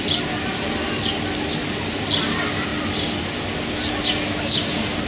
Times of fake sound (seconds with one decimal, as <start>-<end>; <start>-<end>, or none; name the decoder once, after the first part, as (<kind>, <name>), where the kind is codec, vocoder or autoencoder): none